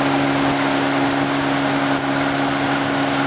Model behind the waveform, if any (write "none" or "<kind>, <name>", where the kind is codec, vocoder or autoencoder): none